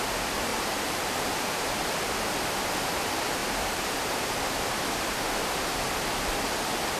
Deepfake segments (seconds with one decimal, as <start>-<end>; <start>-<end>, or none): 0.5-1.6; 3.4-3.9